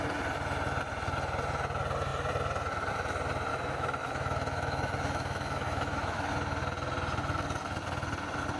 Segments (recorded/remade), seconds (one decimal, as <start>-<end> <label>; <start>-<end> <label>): 0.0-3.5 recorded; 3.5-6.3 remade; 6.3-8.6 recorded